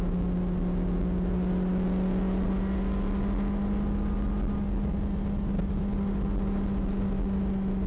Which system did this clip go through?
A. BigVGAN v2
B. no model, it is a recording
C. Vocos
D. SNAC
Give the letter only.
B